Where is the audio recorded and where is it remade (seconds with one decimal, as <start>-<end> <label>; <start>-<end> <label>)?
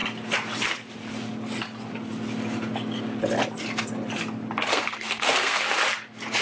0.0-4.7 recorded; 4.7-5.6 remade; 5.6-6.4 recorded